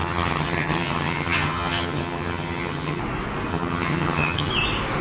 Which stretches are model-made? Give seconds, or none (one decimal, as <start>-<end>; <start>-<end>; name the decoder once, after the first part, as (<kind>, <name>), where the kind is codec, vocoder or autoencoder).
0.0-3.0 (vocoder, HiFi-GAN); 3.5-4.5